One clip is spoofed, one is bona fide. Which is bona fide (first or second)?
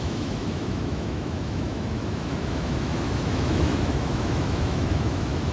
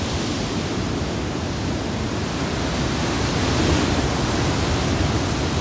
second